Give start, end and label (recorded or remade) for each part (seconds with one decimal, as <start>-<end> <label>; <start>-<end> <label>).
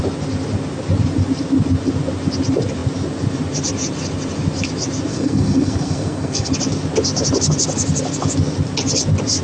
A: 0.0-5.1 recorded; 5.1-6.5 remade; 6.5-9.4 recorded